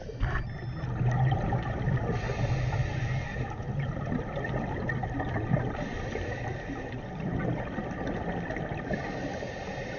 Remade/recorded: recorded